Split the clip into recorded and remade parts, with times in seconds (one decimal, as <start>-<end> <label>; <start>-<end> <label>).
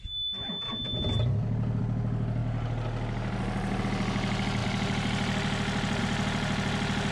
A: 0.0-7.1 recorded